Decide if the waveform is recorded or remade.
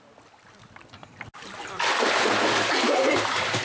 recorded